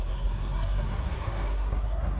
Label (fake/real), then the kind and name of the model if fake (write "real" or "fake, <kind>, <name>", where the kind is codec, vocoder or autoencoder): fake, codec, SNAC